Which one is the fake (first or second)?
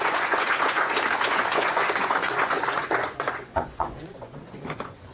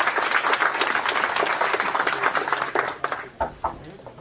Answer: first